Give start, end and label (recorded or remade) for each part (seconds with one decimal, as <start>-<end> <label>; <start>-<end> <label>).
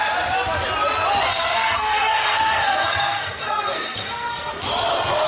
0.0-1.3 recorded; 1.3-4.5 remade; 4.5-5.3 recorded